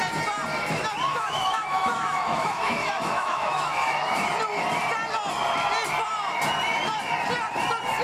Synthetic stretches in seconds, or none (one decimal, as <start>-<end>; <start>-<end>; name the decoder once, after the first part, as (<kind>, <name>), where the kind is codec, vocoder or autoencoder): 1.1-4.3 (autoencoder, DAC-VAE)